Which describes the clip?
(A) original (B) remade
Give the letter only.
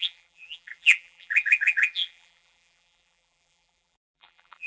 B